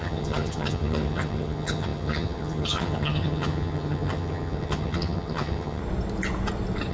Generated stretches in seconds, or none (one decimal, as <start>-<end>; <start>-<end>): 0.0-5.8